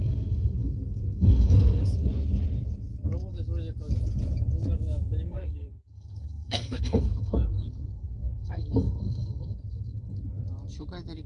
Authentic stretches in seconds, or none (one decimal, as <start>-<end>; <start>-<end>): 1.8-5.3; 10.2-11.3